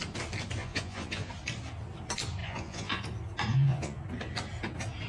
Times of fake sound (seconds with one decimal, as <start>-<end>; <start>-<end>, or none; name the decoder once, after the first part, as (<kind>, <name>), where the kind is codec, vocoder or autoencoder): 0.6-1.3 (vocoder, Vocos); 2.4-3.0; 3.5-4.0